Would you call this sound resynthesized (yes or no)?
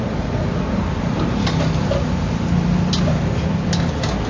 no